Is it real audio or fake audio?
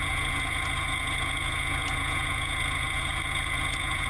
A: fake